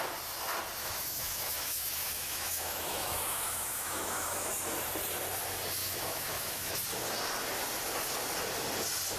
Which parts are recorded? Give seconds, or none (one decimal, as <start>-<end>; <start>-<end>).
0.0-0.8; 4.5-5.8; 6.7-9.2